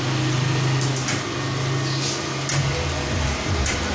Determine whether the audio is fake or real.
real